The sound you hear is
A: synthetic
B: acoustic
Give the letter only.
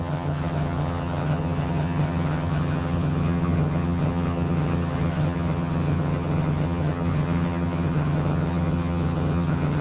A